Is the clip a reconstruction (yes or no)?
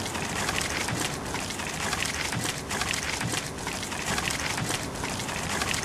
no